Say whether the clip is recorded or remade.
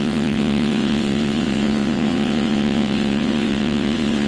remade